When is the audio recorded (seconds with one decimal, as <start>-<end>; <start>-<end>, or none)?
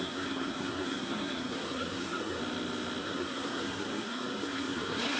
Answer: 2.4-3.0